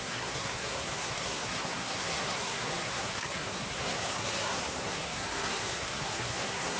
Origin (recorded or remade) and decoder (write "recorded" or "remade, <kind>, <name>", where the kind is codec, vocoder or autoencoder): remade, codec, SNAC